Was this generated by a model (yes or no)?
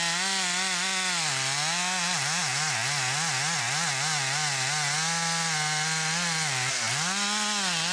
no